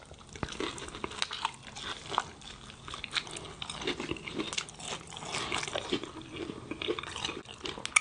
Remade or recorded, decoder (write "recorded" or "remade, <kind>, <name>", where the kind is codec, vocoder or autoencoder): recorded